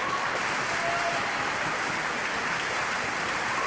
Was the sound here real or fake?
real